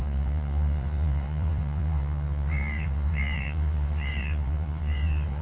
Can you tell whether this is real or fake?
fake